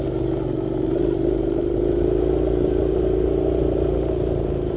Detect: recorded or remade remade